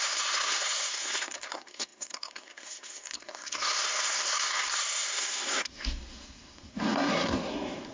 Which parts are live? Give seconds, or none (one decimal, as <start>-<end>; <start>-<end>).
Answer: none